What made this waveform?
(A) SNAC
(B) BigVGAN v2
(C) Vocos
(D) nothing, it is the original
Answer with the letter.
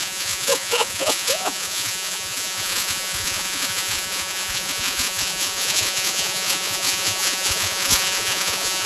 C